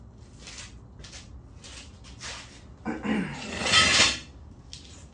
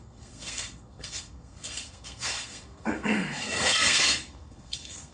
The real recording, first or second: first